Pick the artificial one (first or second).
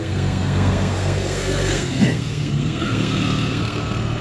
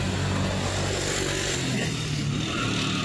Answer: first